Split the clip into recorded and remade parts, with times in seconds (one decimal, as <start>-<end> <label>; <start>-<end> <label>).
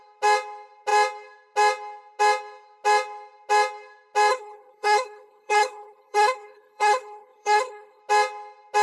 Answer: 0.0-4.3 recorded; 4.3-8.0 remade; 8.0-8.8 recorded